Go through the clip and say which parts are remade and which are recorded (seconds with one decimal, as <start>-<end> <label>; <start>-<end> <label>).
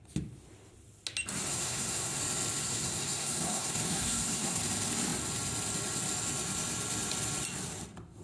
0.0-1.5 recorded; 1.5-2.2 remade; 2.2-2.6 recorded; 2.6-4.6 remade; 4.6-8.2 recorded